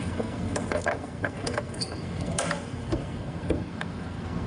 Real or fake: fake